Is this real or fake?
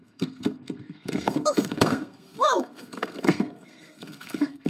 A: fake